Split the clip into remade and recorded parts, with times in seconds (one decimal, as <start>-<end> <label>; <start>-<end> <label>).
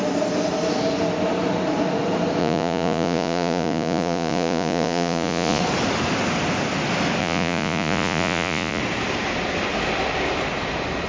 0.0-2.4 recorded; 2.4-5.6 remade; 5.6-7.2 recorded; 7.2-8.8 remade; 8.8-11.1 recorded